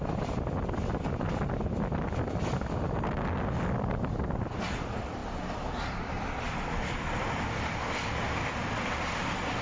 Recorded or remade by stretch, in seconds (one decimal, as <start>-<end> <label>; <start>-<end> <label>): 0.0-9.6 recorded